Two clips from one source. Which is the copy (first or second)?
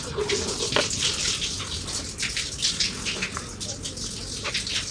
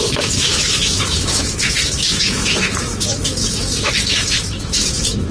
second